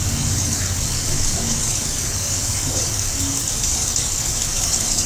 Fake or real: fake